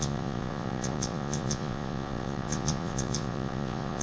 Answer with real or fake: fake